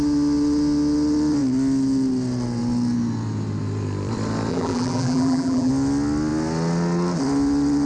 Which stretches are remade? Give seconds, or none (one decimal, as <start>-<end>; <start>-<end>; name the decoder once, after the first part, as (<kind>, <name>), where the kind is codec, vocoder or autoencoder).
4.5-5.7 (vocoder, BigVGAN v2)